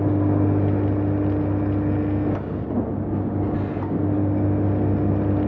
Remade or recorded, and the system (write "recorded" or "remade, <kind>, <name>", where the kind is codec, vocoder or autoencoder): recorded